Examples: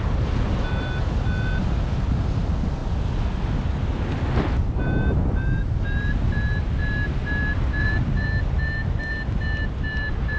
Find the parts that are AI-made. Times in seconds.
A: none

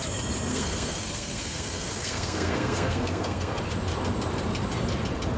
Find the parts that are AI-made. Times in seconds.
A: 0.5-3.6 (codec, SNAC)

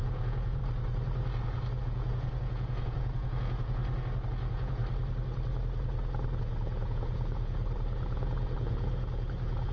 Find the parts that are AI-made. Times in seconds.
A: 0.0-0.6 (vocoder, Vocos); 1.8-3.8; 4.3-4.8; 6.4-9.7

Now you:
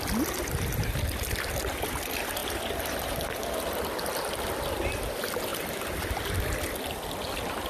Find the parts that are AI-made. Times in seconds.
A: none